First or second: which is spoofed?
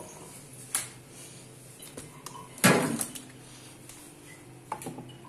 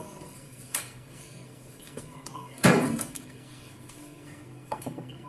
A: second